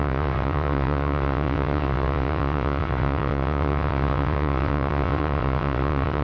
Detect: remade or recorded remade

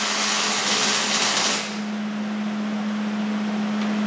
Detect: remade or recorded recorded